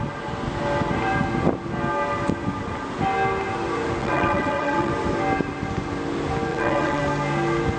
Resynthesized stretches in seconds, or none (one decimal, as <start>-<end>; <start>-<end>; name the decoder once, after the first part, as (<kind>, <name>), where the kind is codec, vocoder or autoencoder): 4.0-4.9 (vocoder, WaveNeXt); 6.5-7.0